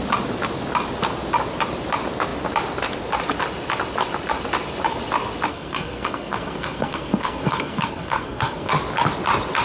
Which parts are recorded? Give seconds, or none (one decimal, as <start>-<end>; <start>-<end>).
0.0-5.5; 8.7-9.6